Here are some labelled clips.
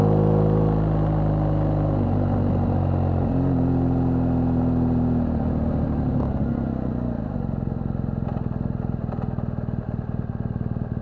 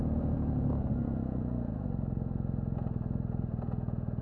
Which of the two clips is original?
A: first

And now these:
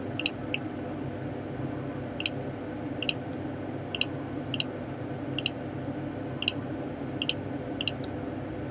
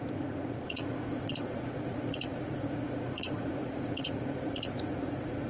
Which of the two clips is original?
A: first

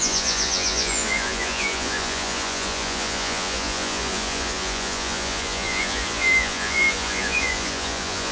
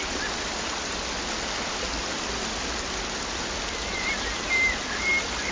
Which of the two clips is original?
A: second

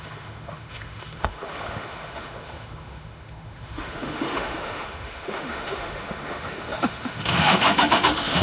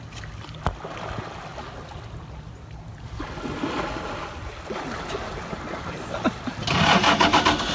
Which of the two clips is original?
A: second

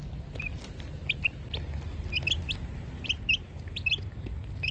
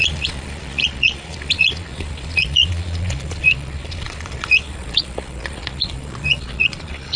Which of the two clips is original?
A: first